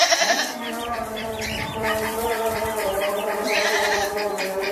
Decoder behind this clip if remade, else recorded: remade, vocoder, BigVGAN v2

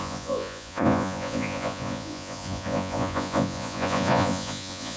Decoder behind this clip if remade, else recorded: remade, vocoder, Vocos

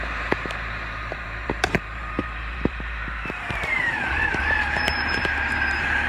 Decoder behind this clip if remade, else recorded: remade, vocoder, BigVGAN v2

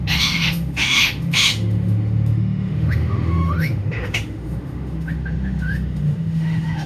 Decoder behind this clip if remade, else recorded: remade, autoencoder, DAC-VAE